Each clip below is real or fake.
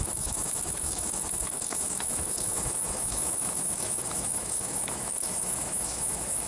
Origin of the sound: fake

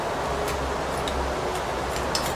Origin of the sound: real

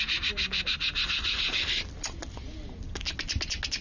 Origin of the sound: real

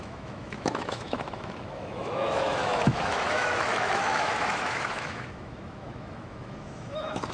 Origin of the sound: fake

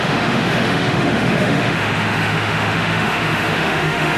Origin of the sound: fake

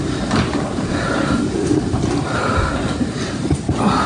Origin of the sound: real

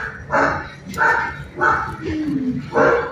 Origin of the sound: real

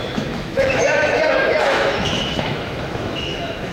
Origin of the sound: fake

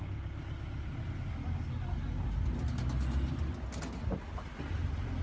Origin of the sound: real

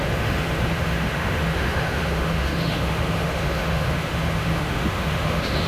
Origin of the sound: fake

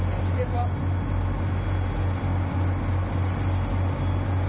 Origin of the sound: real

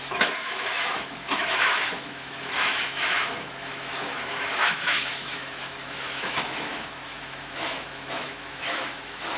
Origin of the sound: fake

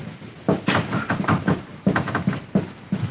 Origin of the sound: real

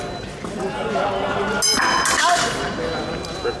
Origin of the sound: real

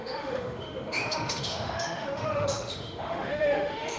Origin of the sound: fake